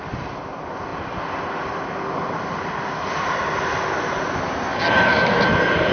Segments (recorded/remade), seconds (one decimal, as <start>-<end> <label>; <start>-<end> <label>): 0.0-5.9 recorded